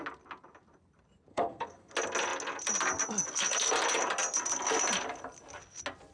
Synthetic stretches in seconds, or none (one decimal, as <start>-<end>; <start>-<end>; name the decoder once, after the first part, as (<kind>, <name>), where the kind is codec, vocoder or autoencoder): 1.3-1.9 (codec, SNAC)